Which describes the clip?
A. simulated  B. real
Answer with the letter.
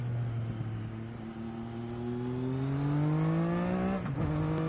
B